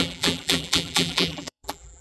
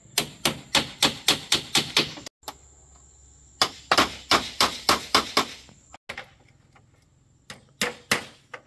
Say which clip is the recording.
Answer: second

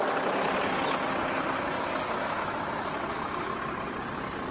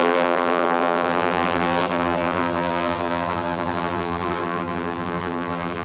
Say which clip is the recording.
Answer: first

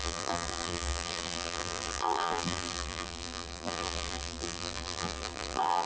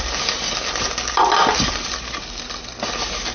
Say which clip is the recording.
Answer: second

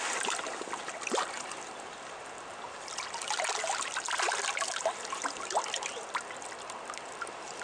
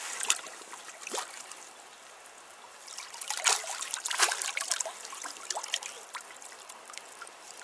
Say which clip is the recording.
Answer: first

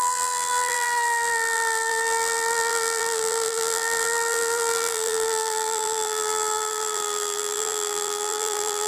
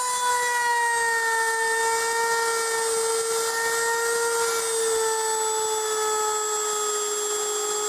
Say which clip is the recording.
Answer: second